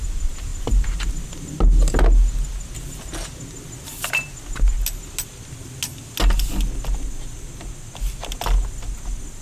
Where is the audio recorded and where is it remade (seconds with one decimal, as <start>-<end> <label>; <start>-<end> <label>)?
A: 0.0-9.4 recorded